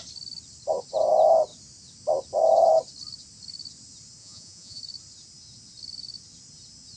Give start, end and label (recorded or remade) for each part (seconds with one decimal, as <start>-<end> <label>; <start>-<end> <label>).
0.0-4.2 recorded; 4.2-4.8 remade; 4.8-7.0 recorded